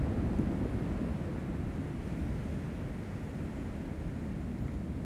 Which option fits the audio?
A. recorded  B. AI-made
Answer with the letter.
A